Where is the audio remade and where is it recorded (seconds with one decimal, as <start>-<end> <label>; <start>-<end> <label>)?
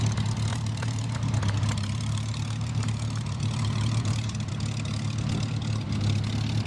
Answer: 0.0-0.5 recorded; 0.5-4.5 remade; 4.5-6.7 recorded